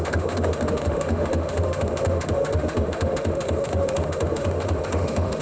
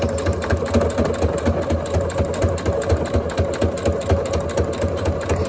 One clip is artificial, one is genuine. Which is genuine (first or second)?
second